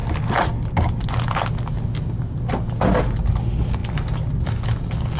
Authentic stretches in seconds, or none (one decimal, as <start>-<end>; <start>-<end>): 0.0-5.2